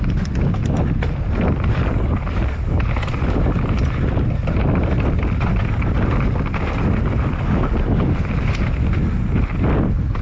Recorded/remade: recorded